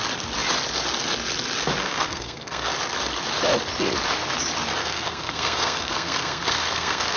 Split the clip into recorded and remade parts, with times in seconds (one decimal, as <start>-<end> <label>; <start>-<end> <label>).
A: 0.0-1.8 recorded; 1.8-2.7 remade; 2.7-4.8 recorded; 4.8-7.2 remade

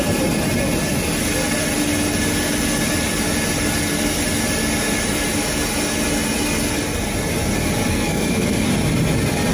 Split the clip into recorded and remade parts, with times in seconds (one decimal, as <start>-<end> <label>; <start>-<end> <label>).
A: 0.0-7.9 recorded; 7.9-8.7 remade; 8.7-9.5 recorded

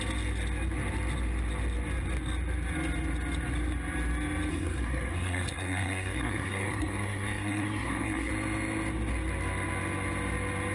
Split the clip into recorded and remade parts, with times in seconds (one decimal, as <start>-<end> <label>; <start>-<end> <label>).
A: 0.0-4.5 recorded; 4.5-8.3 remade; 8.3-10.7 recorded

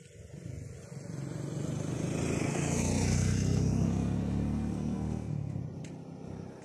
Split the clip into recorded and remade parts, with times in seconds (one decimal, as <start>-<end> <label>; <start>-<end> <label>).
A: 0.0-2.4 recorded; 2.4-5.6 remade; 5.6-6.6 recorded

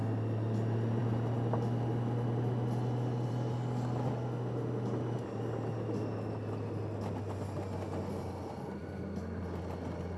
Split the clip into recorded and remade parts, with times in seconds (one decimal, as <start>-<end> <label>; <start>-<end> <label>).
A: 0.0-10.2 recorded